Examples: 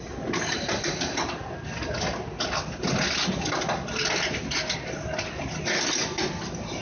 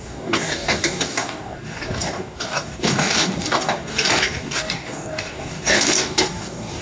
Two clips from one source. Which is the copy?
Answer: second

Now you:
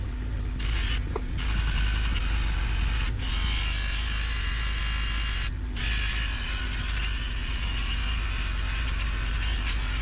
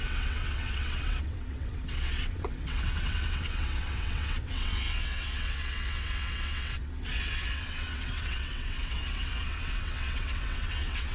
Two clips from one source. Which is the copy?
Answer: second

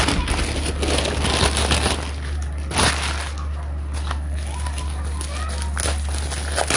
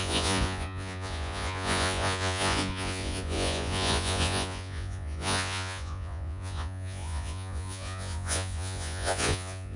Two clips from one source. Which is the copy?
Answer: second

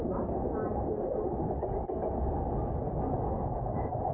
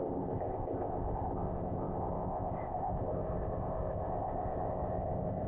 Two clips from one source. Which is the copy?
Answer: second